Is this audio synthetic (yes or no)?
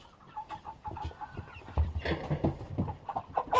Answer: no